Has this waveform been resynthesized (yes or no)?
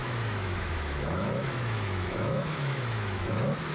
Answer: yes